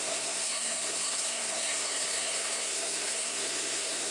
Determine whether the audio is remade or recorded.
remade